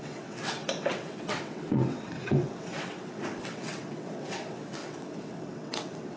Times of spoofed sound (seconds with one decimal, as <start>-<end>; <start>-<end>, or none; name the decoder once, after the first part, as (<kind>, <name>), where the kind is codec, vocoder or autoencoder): 0.0-6.2 (vocoder, WaveNeXt)